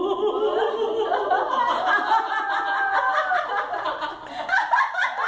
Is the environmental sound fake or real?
real